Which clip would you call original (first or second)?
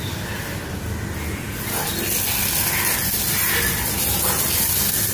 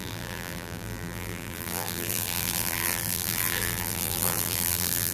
first